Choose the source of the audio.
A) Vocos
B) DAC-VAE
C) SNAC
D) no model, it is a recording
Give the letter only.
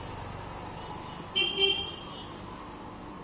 D